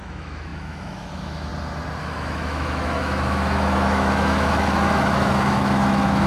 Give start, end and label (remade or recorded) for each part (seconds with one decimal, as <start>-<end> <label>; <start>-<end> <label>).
0.0-1.5 remade; 1.5-2.0 recorded; 2.0-6.3 remade